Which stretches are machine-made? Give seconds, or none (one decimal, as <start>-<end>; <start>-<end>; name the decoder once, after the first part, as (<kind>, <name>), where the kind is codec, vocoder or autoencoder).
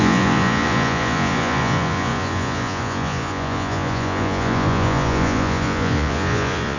0.0-6.8 (vocoder, Vocos)